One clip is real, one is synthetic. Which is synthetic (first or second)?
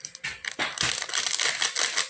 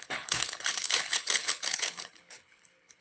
second